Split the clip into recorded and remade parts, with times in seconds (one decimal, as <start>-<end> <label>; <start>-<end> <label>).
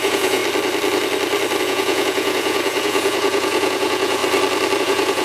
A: 0.0-0.4 remade; 0.4-1.6 recorded; 1.6-4.2 remade; 4.2-4.8 recorded; 4.8-5.2 remade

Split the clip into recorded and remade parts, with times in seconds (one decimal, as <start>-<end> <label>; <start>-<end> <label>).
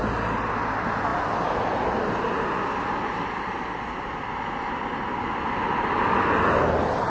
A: 0.0-7.1 recorded